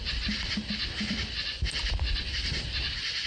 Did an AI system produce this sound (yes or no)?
yes